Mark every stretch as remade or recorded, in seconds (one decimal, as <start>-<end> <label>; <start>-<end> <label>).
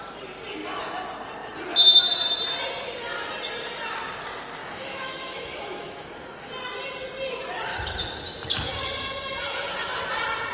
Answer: 0.0-4.6 recorded; 4.6-6.5 remade; 6.5-10.5 recorded